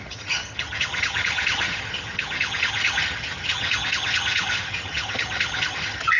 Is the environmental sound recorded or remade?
remade